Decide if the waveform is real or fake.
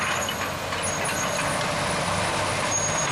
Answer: real